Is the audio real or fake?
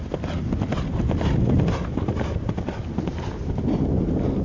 real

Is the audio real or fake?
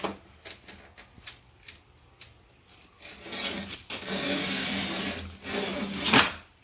real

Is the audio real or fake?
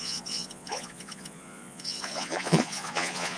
fake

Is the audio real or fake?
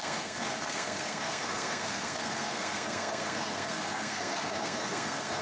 fake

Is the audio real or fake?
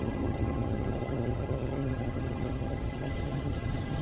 fake